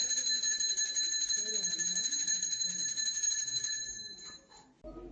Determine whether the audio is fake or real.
real